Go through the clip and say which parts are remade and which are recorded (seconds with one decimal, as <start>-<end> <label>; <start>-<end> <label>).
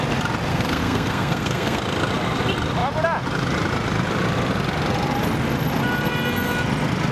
0.0-0.5 recorded; 0.5-1.8 remade; 1.8-7.1 recorded